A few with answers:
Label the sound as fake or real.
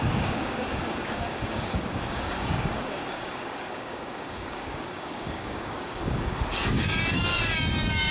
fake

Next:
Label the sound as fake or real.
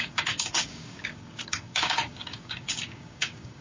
fake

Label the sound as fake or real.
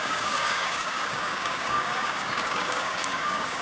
fake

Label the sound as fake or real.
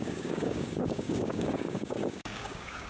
fake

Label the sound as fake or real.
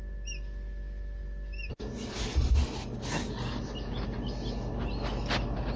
real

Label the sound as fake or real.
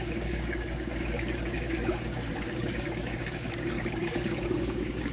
fake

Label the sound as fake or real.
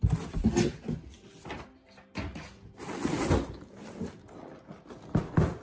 real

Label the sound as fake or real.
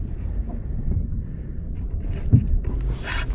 real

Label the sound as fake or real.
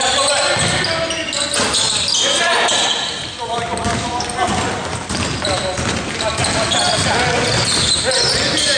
real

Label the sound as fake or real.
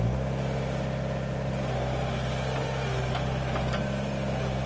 real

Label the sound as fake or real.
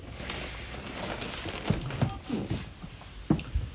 real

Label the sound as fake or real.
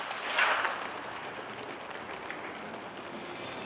real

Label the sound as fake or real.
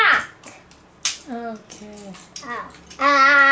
real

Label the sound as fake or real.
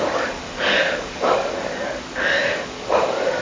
fake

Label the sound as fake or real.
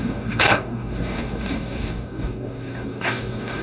fake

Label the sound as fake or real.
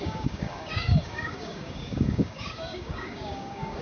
fake